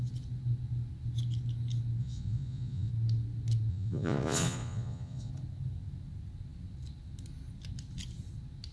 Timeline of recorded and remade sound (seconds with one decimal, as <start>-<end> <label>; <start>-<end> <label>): 0.0-2.0 recorded; 2.0-2.9 remade; 2.9-3.7 recorded; 3.7-5.3 remade; 5.3-8.7 recorded